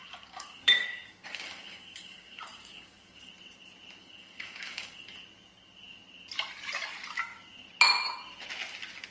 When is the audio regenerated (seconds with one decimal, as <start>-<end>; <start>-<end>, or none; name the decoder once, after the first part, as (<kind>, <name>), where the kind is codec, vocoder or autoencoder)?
0.0-3.3 (codec, DAC); 4.0-5.2